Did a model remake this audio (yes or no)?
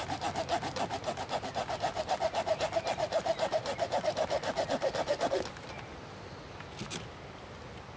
no